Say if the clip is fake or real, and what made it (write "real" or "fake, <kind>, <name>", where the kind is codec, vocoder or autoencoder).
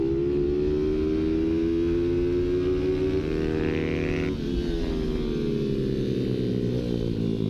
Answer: real